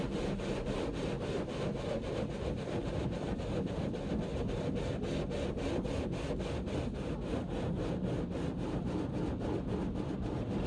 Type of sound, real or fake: real